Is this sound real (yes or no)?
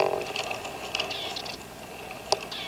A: yes